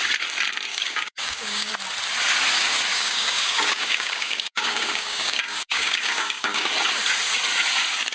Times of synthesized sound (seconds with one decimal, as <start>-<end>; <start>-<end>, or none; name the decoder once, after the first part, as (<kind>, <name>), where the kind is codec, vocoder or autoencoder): 0.7-1.7 (codec, DAC); 2.9-6.7